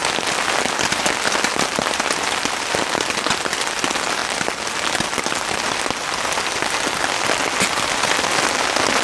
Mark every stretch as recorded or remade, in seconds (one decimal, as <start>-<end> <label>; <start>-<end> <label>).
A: 0.0-9.0 recorded